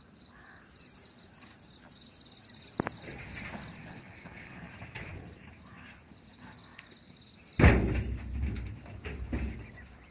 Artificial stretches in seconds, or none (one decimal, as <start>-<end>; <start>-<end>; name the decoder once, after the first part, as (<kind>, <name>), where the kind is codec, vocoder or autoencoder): 3.8-4.6 (codec, HILCodec)